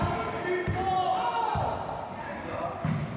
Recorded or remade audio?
recorded